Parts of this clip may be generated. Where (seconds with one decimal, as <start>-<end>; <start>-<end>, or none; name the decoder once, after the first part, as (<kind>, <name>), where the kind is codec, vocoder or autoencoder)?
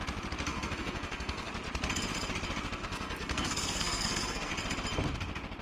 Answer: 0.5-1.5 (codec, SNAC); 2.8-4.5